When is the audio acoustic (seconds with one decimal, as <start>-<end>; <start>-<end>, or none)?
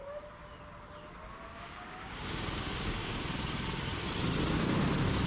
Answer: 0.0-1.5; 3.2-5.3